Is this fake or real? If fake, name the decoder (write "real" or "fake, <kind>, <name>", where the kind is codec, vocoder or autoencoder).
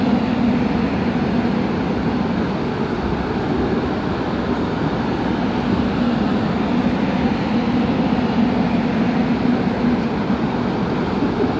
real